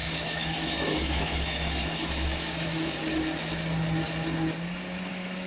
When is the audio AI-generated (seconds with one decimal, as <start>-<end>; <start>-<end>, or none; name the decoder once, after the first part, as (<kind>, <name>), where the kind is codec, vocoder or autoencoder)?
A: 0.0-3.0 (autoencoder, DAC-VAE); 5.1-5.5